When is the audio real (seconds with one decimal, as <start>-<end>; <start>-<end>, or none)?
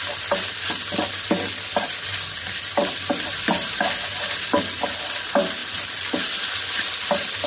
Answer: 0.0-7.5